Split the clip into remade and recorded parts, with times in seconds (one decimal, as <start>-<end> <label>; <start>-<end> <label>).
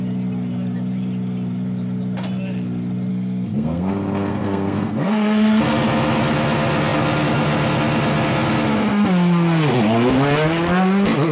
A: 0.0-3.1 recorded; 3.1-3.9 remade; 3.9-4.3 recorded; 4.3-5.6 remade; 5.6-11.3 recorded